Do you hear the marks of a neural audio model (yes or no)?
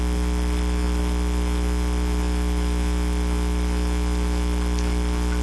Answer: no